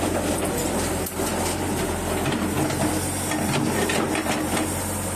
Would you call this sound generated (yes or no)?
no